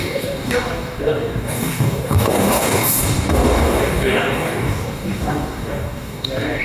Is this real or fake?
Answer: fake